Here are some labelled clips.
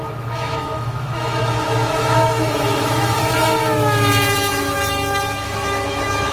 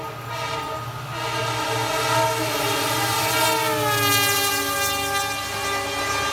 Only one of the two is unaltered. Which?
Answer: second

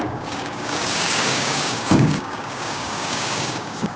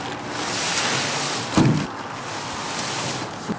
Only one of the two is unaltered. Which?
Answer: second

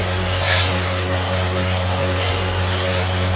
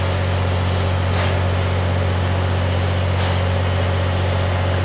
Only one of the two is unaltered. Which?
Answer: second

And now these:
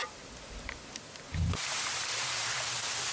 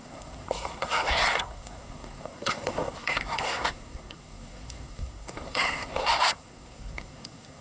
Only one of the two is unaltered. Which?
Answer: first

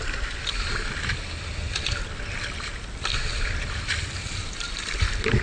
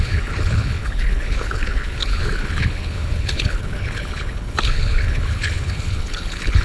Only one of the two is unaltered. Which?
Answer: first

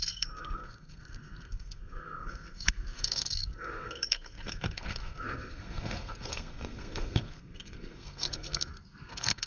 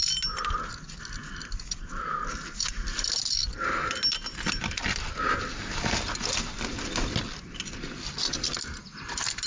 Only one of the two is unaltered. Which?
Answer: second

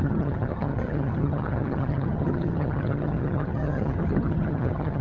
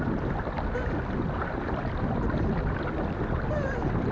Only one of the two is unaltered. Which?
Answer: second